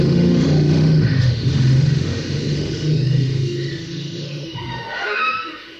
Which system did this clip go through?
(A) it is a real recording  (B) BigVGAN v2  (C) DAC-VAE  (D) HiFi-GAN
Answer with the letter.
C